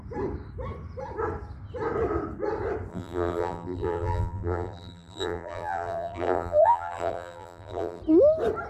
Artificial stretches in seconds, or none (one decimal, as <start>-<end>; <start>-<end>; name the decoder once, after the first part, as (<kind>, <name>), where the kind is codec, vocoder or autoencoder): 2.9-8.0 (vocoder, BigVGAN v2)